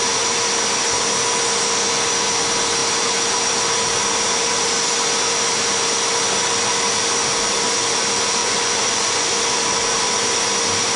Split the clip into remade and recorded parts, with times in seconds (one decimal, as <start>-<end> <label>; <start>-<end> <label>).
0.0-8.4 recorded; 8.4-9.3 remade; 9.3-11.0 recorded